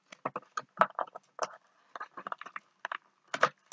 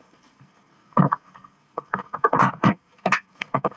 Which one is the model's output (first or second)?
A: second